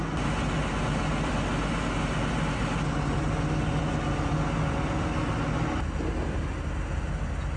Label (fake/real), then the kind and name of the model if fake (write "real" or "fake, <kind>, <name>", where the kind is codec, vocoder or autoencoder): real